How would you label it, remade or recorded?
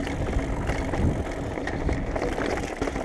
recorded